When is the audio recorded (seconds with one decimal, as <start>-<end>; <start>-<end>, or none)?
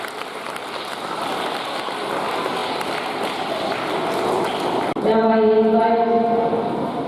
0.0-7.1